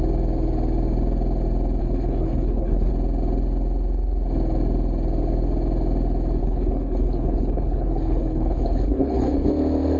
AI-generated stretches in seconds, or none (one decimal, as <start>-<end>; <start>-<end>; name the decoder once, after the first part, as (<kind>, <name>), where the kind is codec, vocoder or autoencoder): 1.8-2.9 (codec, HILCodec); 6.4-9.5